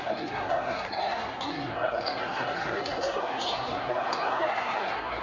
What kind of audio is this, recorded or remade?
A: remade